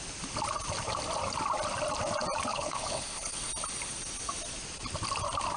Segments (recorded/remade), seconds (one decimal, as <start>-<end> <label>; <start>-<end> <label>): 0.0-2.5 recorded; 2.5-3.4 remade; 3.4-5.6 recorded